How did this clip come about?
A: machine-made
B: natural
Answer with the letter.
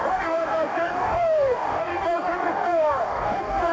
A